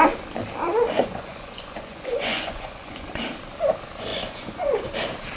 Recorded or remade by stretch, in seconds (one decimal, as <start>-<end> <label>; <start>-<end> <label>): 0.0-1.0 recorded; 1.0-3.1 remade; 3.1-4.1 recorded; 4.1-4.9 remade; 4.9-5.4 recorded

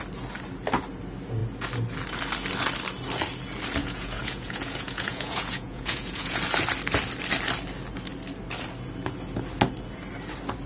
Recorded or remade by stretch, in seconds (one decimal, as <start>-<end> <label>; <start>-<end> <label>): 0.0-3.8 recorded; 3.8-6.4 remade; 6.4-10.7 recorded

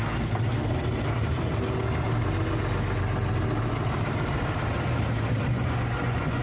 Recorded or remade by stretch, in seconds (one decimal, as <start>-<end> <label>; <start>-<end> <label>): 0.0-5.5 recorded; 5.5-6.4 remade

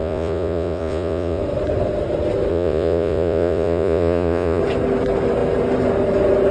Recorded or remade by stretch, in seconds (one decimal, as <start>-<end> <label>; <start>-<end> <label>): 0.0-1.4 remade; 1.4-2.5 recorded; 2.5-4.6 remade; 4.6-6.5 recorded

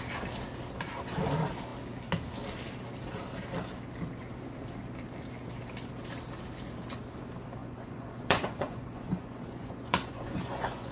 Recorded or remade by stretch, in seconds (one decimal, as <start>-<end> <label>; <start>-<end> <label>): 0.0-7.6 recorded; 7.6-10.9 remade

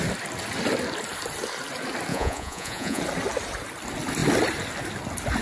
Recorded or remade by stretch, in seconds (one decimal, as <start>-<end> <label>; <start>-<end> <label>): 0.0-2.1 recorded; 2.1-3.0 remade; 3.0-5.4 recorded